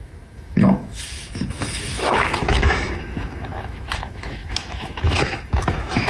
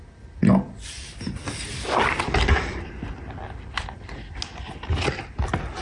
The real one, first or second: second